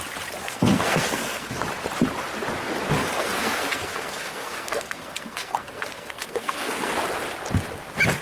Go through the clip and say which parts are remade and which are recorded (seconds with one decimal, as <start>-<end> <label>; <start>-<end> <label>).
0.0-0.4 recorded; 0.4-1.6 remade; 1.6-3.0 recorded; 3.0-6.9 remade; 6.9-8.2 recorded